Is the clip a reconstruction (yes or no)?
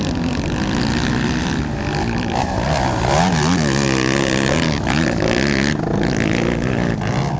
no